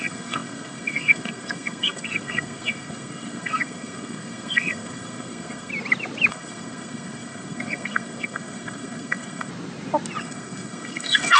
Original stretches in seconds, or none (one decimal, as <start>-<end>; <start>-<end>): 5.7-6.3; 9.5-10.2